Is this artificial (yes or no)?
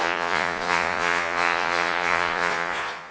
yes